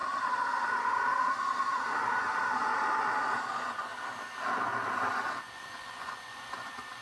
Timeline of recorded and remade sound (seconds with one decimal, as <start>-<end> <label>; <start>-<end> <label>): 0.0-3.5 recorded; 3.5-3.9 remade; 3.9-5.4 recorded; 5.4-7.0 remade